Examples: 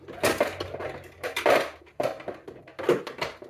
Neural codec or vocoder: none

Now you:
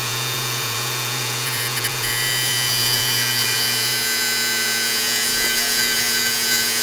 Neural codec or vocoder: vocoder, Vocos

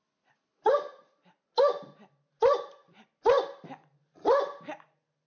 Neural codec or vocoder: none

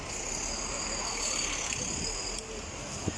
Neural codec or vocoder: none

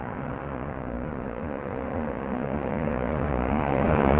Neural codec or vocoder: vocoder, Vocos